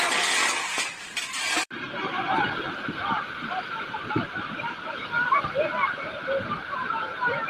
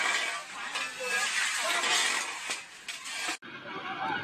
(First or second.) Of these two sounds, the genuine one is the second